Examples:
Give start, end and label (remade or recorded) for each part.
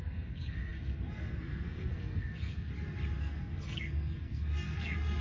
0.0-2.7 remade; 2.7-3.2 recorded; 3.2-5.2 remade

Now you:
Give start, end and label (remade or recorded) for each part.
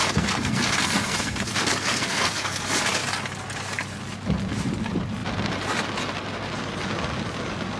0.0-2.6 remade; 2.6-7.8 recorded